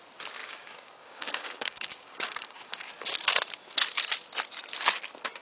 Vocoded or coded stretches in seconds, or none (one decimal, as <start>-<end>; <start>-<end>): 0.4-2.9